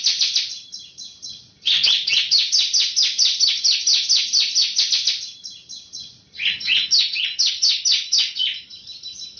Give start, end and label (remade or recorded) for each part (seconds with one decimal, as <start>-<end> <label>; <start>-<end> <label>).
0.0-9.4 recorded